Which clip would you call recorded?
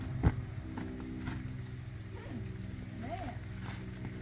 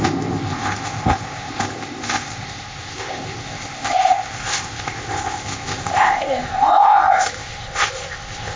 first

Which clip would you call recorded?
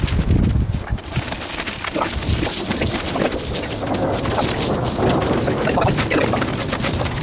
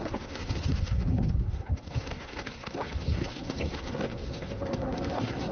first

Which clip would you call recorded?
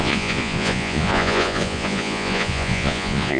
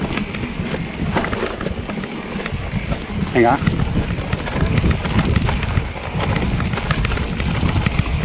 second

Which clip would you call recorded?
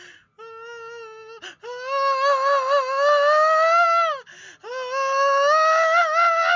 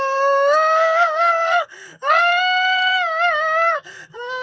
first